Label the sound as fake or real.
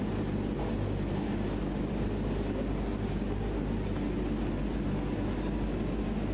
real